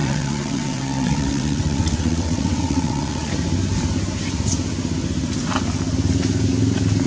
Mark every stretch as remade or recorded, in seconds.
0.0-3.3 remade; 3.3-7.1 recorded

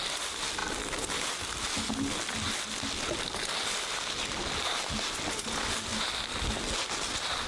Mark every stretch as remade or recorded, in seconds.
0.0-7.5 recorded

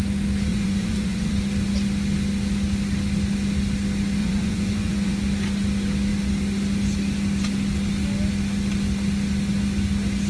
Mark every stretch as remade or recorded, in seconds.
0.0-0.5 recorded; 0.5-1.3 remade; 1.3-4.2 recorded; 4.2-5.1 remade; 5.1-10.3 recorded

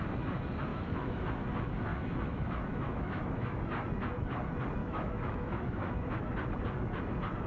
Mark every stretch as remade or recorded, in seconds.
0.0-0.7 recorded; 0.7-1.3 remade; 1.3-1.9 recorded; 1.9-3.6 remade; 3.6-4.8 recorded; 4.8-6.2 remade; 6.2-7.5 recorded

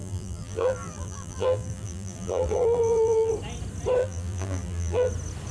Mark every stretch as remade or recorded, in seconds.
0.0-3.3 remade; 3.3-4.0 recorded; 4.0-5.1 remade; 5.1-5.5 recorded

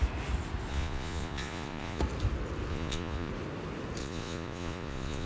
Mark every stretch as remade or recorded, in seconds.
0.0-0.7 recorded; 0.7-2.0 remade; 2.0-2.7 recorded; 2.7-3.3 remade; 3.3-4.0 recorded; 4.0-5.3 remade